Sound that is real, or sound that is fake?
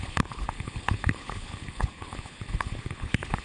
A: fake